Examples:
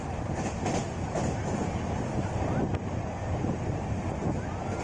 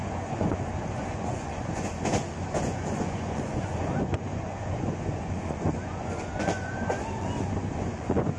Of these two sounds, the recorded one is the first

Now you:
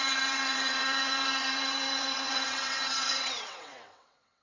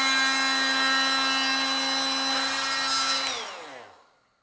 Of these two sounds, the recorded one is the second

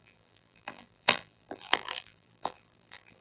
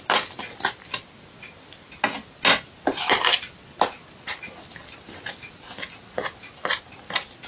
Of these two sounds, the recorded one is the second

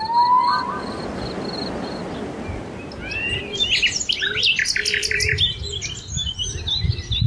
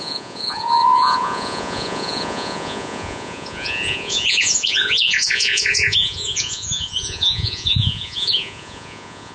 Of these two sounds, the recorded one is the first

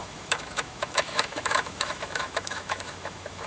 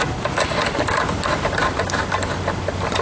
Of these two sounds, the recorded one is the second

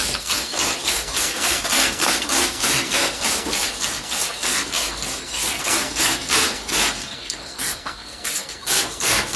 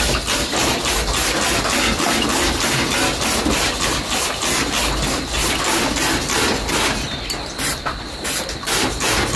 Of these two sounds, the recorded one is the second